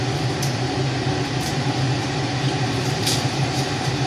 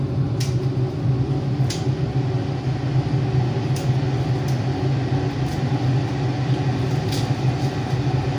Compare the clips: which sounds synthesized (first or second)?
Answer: first